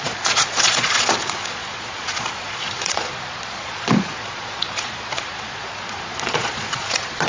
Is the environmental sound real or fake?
fake